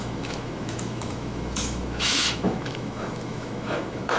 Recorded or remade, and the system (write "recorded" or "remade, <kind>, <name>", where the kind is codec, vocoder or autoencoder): remade, autoencoder, DAC-VAE